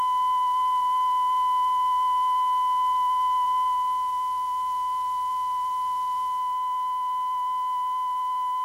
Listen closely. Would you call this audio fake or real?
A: real